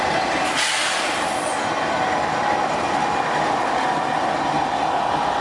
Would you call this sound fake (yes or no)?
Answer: no